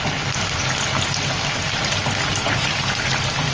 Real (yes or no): yes